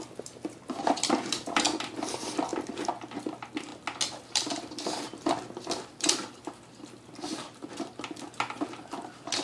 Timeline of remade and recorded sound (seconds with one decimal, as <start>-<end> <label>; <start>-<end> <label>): 0.0-2.5 remade; 2.5-3.2 recorded; 3.2-3.7 remade; 3.7-4.3 recorded; 4.3-9.4 remade

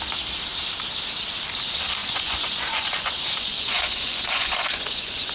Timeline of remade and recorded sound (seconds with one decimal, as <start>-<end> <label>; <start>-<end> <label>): 0.0-2.0 recorded; 2.0-5.3 remade

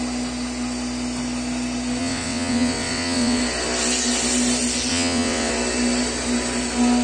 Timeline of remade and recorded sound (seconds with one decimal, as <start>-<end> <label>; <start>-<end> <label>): 0.0-2.0 recorded; 2.0-3.4 remade; 3.4-4.9 recorded; 4.9-5.5 remade; 5.5-7.0 recorded